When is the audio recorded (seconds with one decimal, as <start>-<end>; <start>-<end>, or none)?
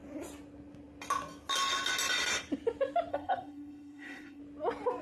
0.0-3.1; 4.4-5.0